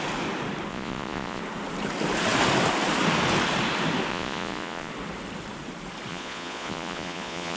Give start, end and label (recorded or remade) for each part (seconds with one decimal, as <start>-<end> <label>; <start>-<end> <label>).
0.0-0.7 recorded; 0.7-1.4 remade; 1.4-4.1 recorded; 4.1-4.9 remade; 4.9-6.1 recorded; 6.1-7.6 remade